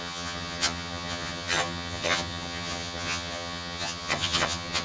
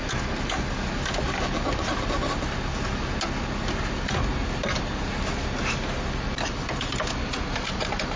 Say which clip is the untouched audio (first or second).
second